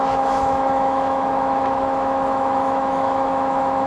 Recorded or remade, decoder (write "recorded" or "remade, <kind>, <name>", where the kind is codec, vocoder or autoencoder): remade, autoencoder, DAC-VAE